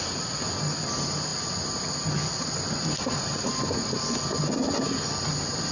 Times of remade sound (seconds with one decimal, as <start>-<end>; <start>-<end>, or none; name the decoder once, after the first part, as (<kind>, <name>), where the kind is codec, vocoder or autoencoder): none